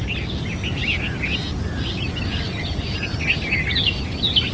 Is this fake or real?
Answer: real